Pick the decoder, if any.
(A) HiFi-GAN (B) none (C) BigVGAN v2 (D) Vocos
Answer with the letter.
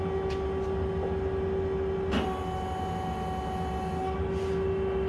B